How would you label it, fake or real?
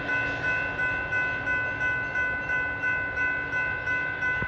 real